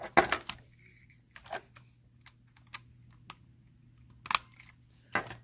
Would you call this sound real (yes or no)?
yes